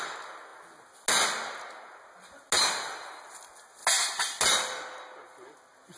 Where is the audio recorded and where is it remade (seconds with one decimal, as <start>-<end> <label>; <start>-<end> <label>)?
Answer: 0.0-6.0 recorded